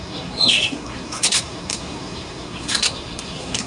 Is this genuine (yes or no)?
no